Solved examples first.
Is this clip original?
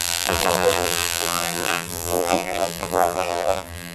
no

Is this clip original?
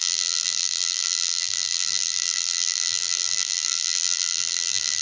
no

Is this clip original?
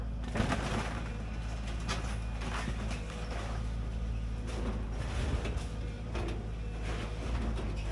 yes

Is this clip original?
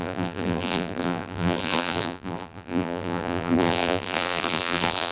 no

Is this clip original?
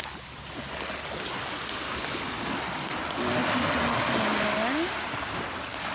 yes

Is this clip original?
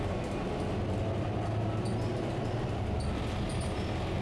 yes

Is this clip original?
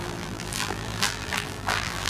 no